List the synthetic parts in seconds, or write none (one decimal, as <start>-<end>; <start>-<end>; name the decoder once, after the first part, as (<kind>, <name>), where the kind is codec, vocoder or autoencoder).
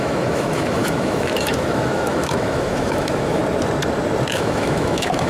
0.0-3.4 (autoencoder, DAC-VAE); 4.3-5.3